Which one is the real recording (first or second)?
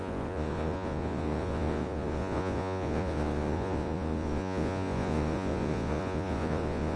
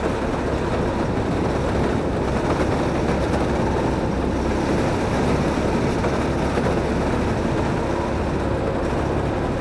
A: second